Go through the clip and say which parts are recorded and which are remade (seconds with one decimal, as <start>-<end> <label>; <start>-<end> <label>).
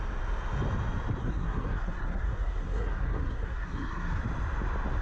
0.0-1.2 recorded; 1.2-4.2 remade; 4.2-5.0 recorded